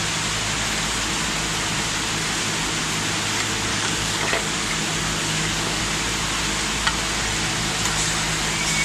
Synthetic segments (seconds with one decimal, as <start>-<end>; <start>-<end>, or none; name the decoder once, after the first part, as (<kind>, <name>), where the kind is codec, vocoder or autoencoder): 3.7-4.7 (codec, DAC); 5.2-5.8